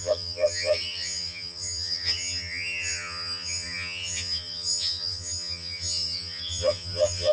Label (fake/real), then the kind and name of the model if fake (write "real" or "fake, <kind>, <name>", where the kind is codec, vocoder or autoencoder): fake, vocoder, HiFi-GAN